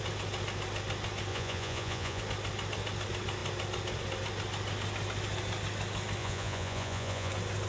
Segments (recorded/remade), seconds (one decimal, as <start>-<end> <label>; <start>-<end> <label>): 0.0-1.3 recorded; 1.3-2.2 remade; 2.2-6.2 recorded; 6.2-7.3 remade; 7.3-7.7 recorded